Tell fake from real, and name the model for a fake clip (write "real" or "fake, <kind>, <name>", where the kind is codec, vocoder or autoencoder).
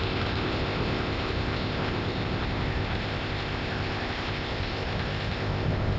fake, codec, ZipCodec